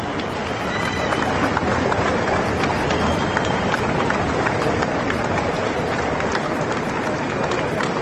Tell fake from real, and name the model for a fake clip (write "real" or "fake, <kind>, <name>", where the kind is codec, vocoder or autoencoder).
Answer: fake, vocoder, BigVGAN v2